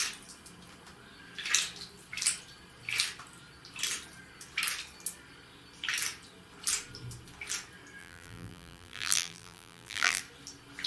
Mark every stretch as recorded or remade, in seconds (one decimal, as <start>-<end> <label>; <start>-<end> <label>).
0.0-8.0 recorded; 8.0-10.2 remade; 10.2-10.9 recorded